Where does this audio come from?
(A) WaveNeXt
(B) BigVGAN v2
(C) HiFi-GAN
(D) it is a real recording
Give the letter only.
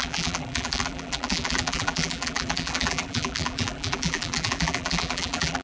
B